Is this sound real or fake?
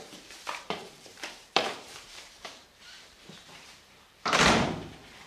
fake